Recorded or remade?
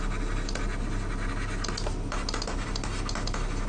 recorded